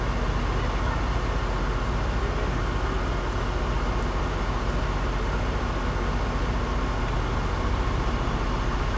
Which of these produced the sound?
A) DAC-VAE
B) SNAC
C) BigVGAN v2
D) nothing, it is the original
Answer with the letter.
D